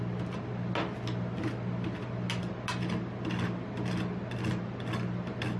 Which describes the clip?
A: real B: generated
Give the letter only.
A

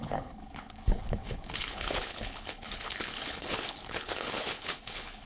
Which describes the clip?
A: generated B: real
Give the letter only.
A